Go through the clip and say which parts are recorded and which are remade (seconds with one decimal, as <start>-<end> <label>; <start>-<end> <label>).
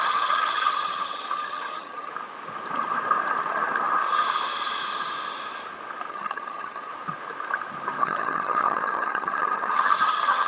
0.0-2.1 remade; 2.1-6.1 recorded; 6.1-6.9 remade; 6.9-8.0 recorded; 8.0-10.5 remade